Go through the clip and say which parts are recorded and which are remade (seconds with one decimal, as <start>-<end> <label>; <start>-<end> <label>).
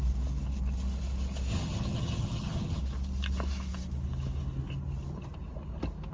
0.0-1.5 recorded; 1.5-2.8 remade; 2.8-6.1 recorded